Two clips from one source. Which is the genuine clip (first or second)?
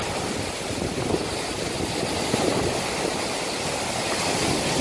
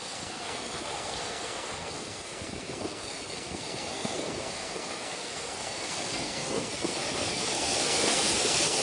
first